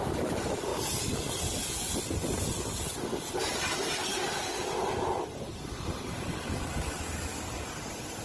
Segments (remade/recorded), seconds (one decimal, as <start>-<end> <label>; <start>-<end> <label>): 0.0-8.2 recorded